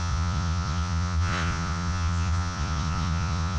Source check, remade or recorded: remade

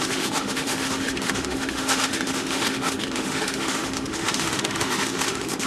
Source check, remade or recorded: remade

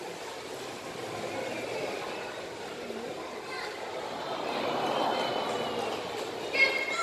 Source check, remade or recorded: recorded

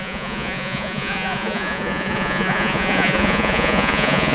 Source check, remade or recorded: remade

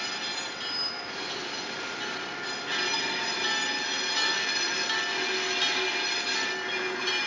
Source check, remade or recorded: recorded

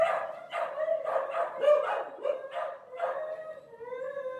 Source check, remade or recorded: recorded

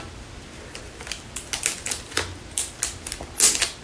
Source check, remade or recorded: recorded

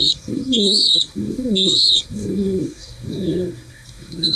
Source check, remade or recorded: remade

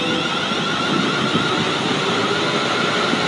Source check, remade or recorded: recorded